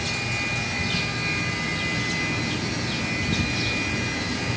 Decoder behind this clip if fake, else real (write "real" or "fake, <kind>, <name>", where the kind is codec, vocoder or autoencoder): real